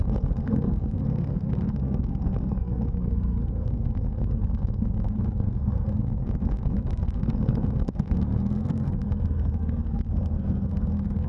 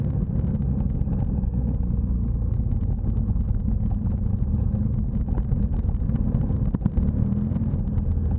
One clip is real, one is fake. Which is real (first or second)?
second